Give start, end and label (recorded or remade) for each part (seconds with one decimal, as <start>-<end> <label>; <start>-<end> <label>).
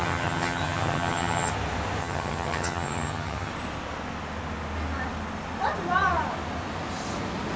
0.0-1.5 remade; 1.5-2.0 recorded; 2.0-3.5 remade; 3.5-7.6 recorded